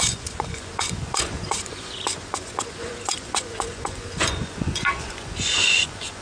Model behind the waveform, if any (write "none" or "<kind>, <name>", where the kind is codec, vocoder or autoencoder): vocoder, Vocos